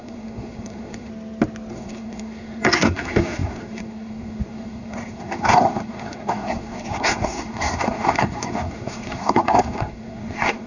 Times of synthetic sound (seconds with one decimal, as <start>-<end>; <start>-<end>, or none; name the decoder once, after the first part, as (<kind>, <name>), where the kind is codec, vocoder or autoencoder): 0.0-1.1 (codec, SNAC); 1.7-10.7

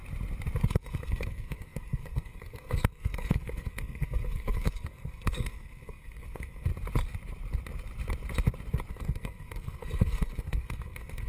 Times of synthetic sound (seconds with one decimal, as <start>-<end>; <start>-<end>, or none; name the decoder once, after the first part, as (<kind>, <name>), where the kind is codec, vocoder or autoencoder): 0.7-6.7 (codec, SNAC); 8.9-11.3